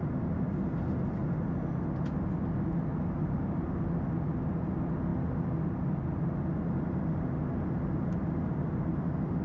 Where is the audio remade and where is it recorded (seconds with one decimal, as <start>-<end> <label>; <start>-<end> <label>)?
0.0-2.9 recorded; 2.9-3.8 remade; 3.8-9.4 recorded